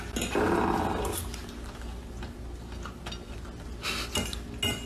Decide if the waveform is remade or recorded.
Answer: recorded